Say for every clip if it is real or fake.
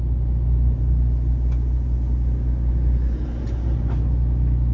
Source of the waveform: real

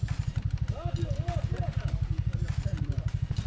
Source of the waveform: real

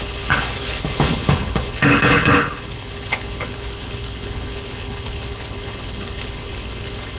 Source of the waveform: fake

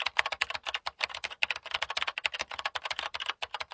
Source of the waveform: real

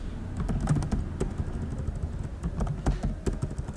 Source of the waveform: real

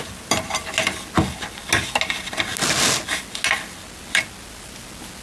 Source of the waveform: real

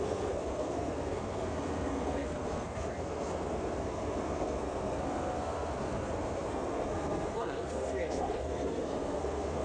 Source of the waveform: fake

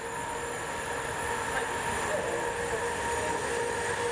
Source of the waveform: real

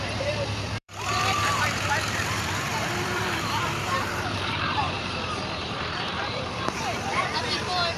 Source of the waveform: fake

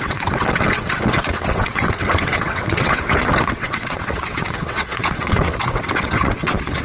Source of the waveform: fake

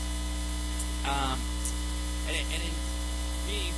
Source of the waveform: real